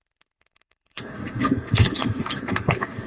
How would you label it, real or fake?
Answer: fake